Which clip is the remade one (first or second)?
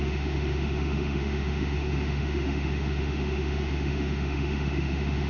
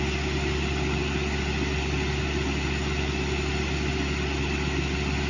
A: first